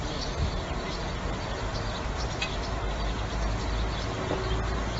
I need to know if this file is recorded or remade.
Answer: recorded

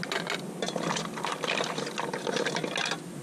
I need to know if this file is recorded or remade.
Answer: recorded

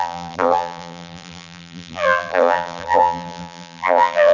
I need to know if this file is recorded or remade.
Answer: remade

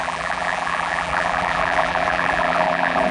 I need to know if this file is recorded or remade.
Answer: remade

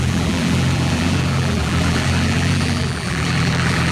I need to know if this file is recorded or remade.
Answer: remade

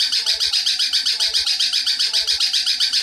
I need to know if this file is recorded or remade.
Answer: remade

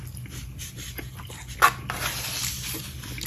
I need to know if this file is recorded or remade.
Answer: recorded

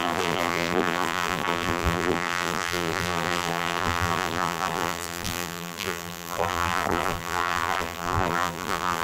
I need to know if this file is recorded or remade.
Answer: remade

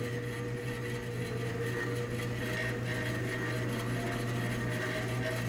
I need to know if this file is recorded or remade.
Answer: recorded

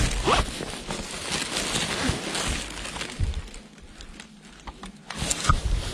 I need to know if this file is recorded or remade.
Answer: recorded